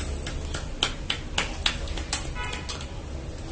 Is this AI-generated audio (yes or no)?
no